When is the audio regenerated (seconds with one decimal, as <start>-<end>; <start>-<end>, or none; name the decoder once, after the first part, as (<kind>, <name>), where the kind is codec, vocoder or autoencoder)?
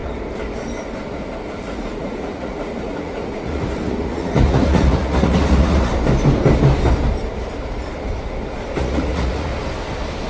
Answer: 1.6-5.9 (vocoder, Vocos); 8.8-9.5